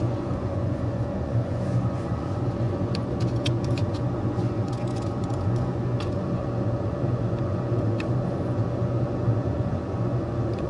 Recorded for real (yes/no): no